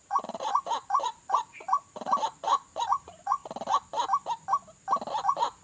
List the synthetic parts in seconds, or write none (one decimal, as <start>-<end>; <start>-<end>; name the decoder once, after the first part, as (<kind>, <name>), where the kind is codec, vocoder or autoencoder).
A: 0.0-3.4 (vocoder, Vocos); 5.1-5.6